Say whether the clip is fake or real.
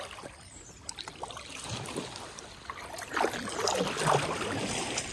real